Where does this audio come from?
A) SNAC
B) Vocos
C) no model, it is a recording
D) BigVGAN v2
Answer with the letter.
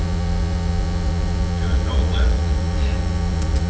B